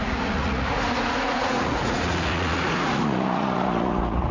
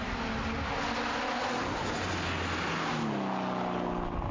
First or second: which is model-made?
first